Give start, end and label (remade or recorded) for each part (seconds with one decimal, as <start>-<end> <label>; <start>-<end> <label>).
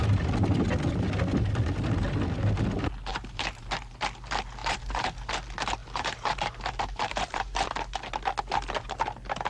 0.0-3.1 recorded; 3.1-3.8 remade; 3.8-4.6 recorded; 4.6-5.3 remade; 5.3-5.8 recorded; 5.8-7.7 remade; 7.7-9.5 recorded